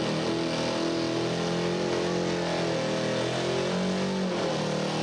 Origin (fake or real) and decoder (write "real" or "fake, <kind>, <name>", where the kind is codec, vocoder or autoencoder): real